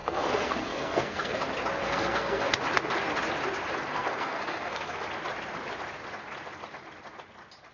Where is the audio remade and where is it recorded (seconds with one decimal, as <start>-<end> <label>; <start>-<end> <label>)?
0.0-1.4 remade; 1.4-1.8 recorded; 1.8-2.5 remade; 2.5-3.9 recorded; 3.9-5.0 remade; 5.0-7.7 recorded

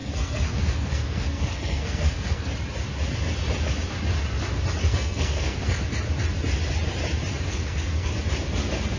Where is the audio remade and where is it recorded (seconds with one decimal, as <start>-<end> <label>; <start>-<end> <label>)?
0.0-2.5 remade; 2.5-4.8 recorded; 4.8-5.8 remade; 5.8-7.5 recorded; 7.5-8.1 remade; 8.1-9.0 recorded

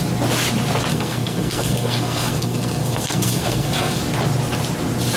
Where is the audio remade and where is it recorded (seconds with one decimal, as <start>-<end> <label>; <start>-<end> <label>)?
0.0-0.9 recorded; 0.9-4.0 remade; 4.0-5.2 recorded

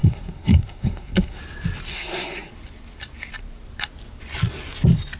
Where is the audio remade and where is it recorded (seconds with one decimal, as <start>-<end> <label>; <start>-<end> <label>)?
0.0-1.4 remade; 1.4-1.9 recorded; 1.9-2.5 remade; 2.5-5.2 recorded

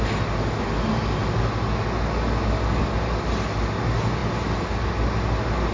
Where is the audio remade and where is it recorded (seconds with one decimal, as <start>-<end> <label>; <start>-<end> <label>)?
0.0-5.7 recorded

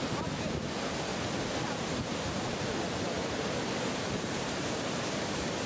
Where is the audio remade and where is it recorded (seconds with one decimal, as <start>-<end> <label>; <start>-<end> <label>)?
0.0-5.7 recorded

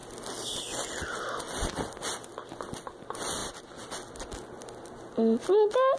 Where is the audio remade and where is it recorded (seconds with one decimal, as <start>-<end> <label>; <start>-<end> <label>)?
0.0-6.0 recorded

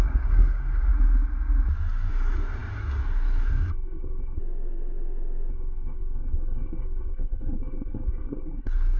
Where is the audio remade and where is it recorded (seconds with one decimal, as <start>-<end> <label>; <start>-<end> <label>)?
0.0-0.9 remade; 0.9-2.1 recorded; 2.1-4.4 remade; 4.4-5.5 recorded; 5.5-9.0 remade